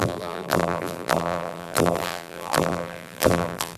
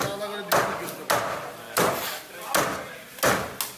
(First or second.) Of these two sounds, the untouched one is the second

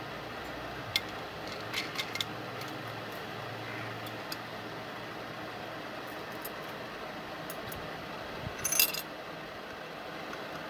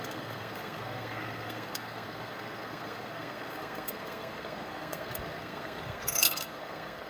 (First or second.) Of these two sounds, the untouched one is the first